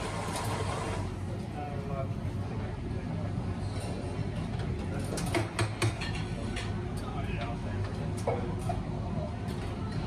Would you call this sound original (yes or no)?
yes